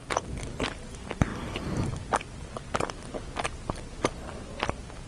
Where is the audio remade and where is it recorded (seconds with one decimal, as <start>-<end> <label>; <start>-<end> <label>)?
0.0-5.1 recorded